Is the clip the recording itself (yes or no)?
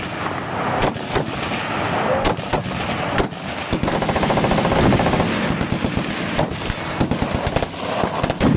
yes